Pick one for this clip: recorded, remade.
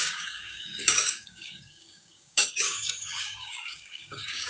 remade